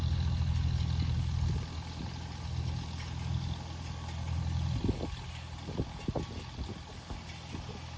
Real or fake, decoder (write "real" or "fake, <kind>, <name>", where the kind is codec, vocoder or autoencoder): real